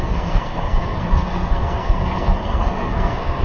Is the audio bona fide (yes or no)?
no